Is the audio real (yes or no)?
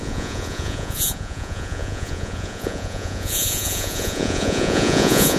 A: no